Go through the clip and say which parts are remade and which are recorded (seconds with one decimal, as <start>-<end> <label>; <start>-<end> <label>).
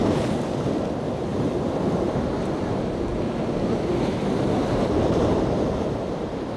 0.0-0.7 recorded; 0.7-6.6 remade